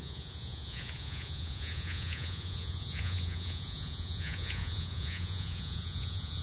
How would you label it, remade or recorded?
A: remade